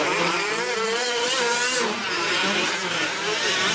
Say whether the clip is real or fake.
fake